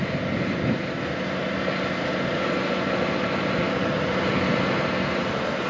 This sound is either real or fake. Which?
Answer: real